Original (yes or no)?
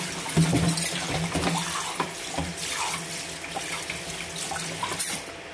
yes